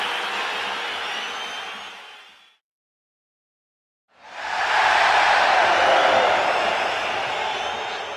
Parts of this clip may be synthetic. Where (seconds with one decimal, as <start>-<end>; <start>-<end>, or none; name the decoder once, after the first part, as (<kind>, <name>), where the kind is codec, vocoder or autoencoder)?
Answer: none